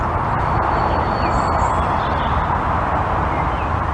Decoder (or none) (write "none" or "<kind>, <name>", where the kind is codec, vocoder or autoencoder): none